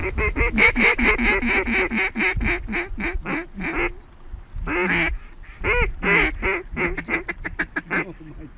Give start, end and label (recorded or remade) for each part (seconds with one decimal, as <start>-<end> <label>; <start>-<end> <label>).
0.0-1.1 remade; 1.1-8.6 recorded